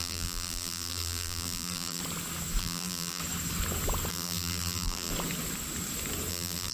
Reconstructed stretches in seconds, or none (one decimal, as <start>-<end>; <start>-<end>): 0.0-2.0; 2.6-3.2; 4.1-5.1; 6.3-6.7

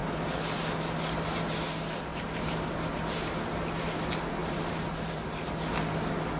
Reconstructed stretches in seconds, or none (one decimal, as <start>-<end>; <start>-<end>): 2.1-2.7; 4.4-5.6

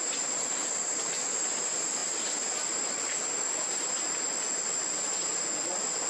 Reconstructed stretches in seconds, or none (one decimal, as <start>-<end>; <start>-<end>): 0.0-6.1

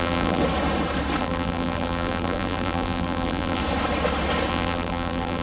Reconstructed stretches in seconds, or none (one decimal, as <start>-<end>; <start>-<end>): 0.0-0.4; 1.2-3.6; 4.5-5.4

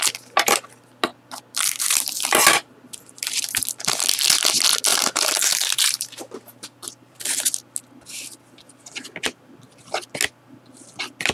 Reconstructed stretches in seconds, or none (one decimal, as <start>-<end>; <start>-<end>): 4.9-7.2